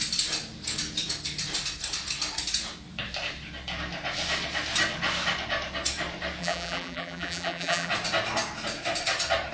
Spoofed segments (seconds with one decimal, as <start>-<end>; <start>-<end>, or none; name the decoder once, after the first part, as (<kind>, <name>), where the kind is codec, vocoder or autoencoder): 6.4-7.9 (vocoder, BigVGAN v2)